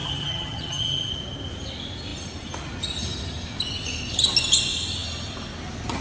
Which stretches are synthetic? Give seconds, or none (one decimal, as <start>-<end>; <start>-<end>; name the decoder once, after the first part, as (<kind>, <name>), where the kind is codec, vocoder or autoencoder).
0.0-1.1 (vocoder, HiFi-GAN)